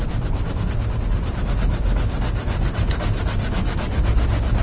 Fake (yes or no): no